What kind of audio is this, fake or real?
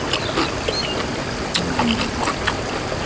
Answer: real